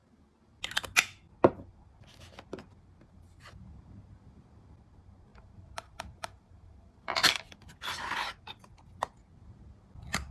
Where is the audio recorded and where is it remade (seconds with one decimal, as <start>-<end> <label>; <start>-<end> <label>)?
0.0-5.3 recorded; 5.3-7.5 remade; 7.5-10.3 recorded